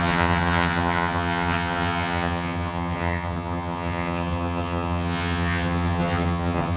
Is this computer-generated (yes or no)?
yes